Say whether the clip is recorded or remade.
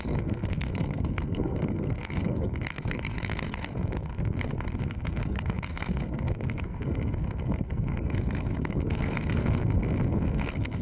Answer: remade